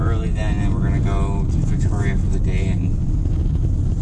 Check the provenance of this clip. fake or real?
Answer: real